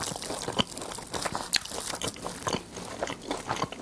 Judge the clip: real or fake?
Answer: real